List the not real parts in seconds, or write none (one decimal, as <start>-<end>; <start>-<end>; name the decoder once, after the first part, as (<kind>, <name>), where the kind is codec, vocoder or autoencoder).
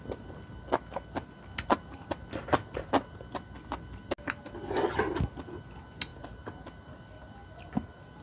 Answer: none